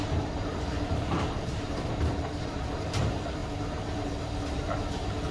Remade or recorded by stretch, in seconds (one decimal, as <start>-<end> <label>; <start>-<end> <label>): 0.0-3.4 remade; 3.4-5.3 recorded